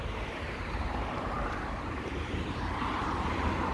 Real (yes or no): no